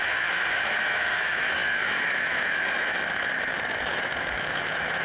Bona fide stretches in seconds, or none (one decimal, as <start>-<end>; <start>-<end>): none